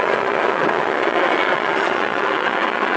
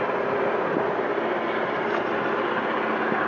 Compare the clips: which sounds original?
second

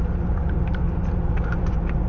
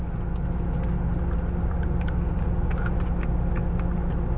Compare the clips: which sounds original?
second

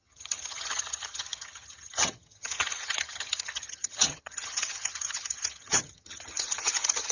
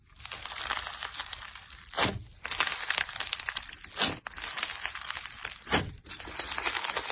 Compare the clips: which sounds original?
second